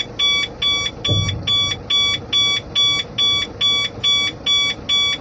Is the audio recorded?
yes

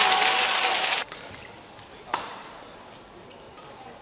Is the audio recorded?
yes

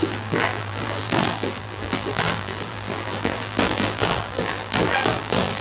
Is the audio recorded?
no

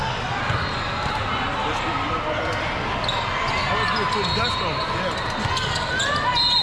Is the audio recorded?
yes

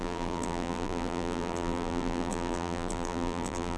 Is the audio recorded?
no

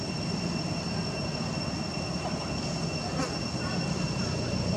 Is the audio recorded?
yes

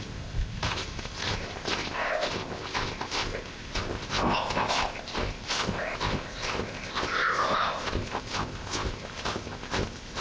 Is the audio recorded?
no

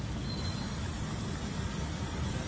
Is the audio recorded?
yes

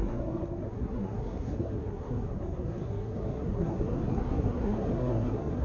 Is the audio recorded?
no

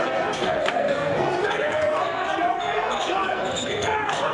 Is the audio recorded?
no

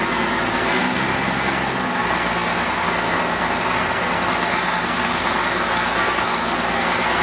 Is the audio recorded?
no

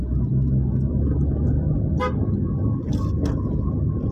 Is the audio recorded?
yes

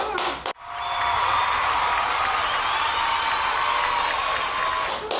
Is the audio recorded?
yes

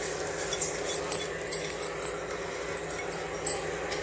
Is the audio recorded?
yes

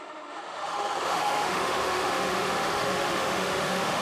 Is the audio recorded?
no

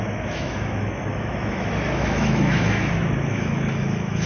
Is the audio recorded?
no